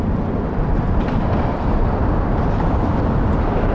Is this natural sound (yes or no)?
no